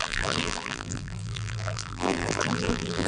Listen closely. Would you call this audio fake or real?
fake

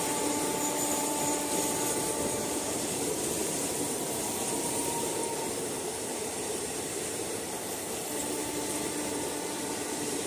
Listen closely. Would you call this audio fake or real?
fake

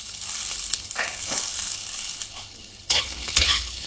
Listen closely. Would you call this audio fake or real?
fake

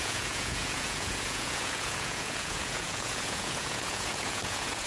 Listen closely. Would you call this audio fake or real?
fake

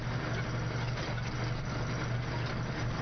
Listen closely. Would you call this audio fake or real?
real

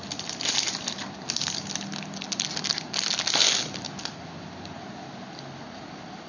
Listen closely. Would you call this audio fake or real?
real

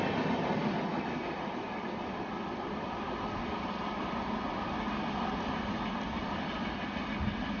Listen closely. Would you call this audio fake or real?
real